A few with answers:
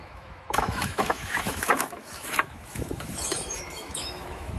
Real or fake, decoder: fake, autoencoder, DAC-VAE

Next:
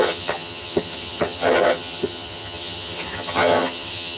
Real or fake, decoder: fake, vocoder, HiFi-GAN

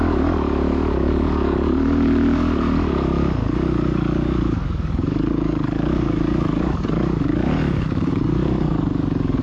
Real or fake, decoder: fake, codec, DAC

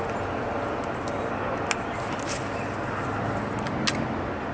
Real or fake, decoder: real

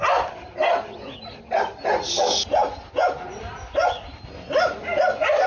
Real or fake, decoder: real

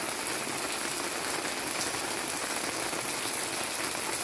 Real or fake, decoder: real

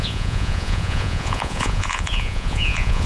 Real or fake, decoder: fake, vocoder, Vocos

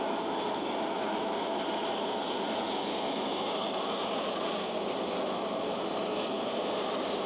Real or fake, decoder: real